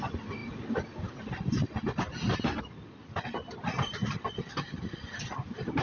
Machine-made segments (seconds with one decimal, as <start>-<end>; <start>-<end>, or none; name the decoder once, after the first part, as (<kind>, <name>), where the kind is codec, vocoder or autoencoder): none